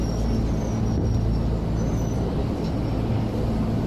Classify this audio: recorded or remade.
recorded